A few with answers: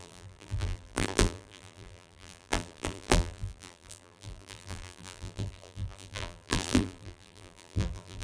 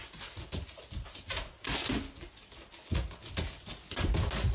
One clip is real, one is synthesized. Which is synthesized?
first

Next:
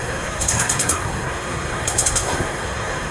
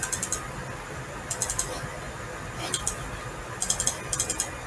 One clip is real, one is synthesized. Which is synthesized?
first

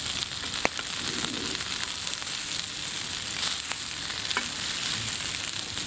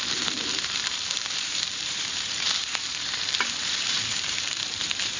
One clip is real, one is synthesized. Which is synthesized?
second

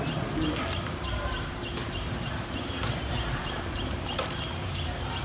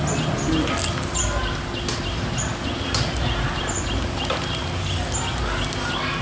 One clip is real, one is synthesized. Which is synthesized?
first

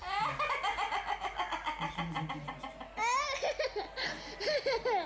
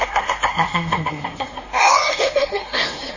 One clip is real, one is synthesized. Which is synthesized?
second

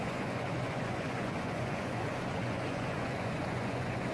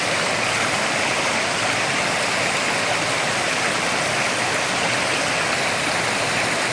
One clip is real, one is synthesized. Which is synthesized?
first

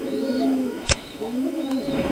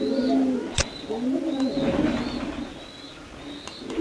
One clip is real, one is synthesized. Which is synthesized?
first